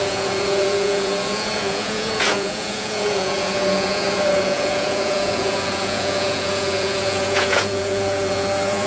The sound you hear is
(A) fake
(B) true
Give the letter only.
A